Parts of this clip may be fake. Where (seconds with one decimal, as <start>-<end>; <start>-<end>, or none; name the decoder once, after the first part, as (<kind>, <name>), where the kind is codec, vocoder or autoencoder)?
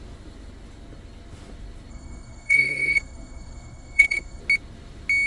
1.9-4.4 (codec, SNAC)